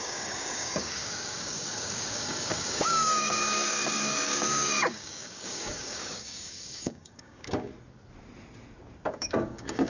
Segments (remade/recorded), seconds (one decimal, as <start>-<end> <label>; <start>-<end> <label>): 0.0-7.7 remade; 7.7-9.1 recorded; 9.1-9.9 remade